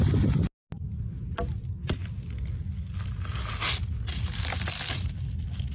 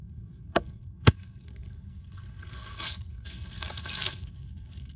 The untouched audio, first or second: first